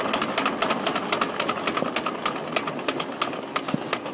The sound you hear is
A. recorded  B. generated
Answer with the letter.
A